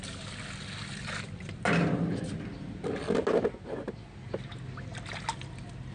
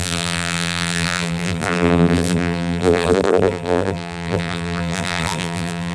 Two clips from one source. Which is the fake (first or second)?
second